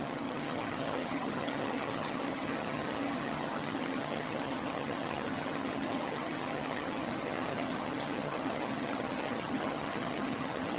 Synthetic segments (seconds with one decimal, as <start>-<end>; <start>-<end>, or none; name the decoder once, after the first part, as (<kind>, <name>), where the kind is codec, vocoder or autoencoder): 0.0-10.8 (vocoder, HiFi-GAN)